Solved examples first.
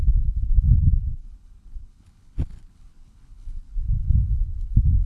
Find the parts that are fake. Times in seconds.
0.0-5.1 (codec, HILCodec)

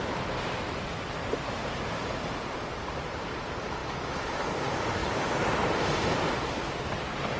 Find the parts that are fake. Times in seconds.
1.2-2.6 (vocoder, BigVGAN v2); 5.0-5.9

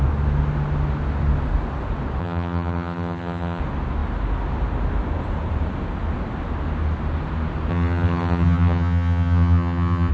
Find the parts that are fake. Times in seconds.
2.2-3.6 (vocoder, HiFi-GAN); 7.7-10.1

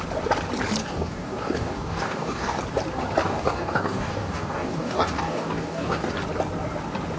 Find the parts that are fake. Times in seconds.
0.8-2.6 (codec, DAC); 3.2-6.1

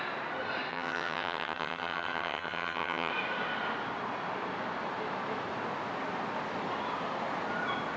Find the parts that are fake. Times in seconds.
0.7-3.1 (vocoder, HiFi-GAN)

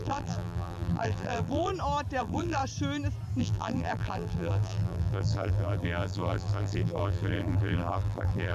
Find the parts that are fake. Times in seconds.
0.0-1.7 (vocoder, BigVGAN v2); 2.2-2.6; 3.4-8.5

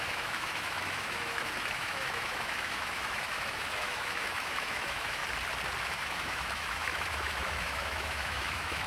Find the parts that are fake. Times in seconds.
0.0-5.2 (autoencoder, DAC-VAE); 5.8-8.9

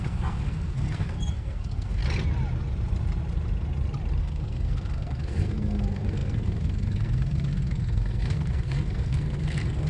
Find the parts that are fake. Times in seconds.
0.0-2.0 (codec, SNAC); 4.2-9.9